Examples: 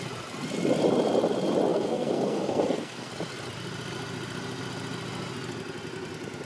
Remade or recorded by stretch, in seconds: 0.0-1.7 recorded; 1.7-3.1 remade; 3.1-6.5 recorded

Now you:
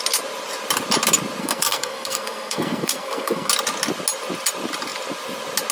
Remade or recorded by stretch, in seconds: 0.0-1.4 recorded; 1.4-3.5 remade; 3.5-5.7 recorded

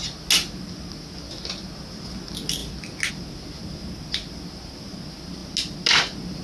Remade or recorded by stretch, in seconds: 0.0-6.4 recorded

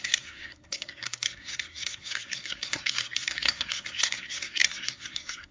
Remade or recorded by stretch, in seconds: 0.0-5.5 remade

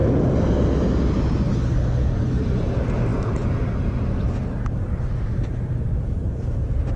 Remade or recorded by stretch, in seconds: 0.0-7.0 recorded